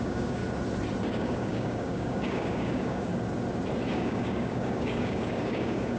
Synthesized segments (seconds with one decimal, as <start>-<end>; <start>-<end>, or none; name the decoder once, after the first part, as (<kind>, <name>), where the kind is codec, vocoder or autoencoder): 0.0-0.4 (codec, DAC); 1.1-3.1; 3.9-6.0